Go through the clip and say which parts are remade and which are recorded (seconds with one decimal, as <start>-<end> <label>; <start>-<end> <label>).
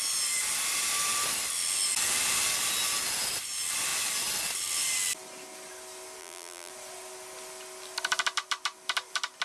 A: 0.0-6.2 recorded; 6.2-6.7 remade; 6.7-9.4 recorded